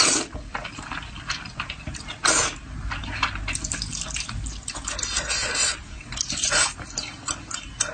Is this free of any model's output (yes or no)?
yes